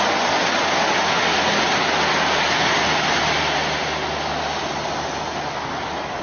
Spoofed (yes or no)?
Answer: no